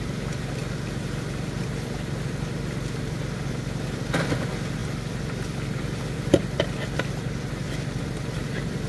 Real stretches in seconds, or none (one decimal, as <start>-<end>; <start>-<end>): 0.0-8.9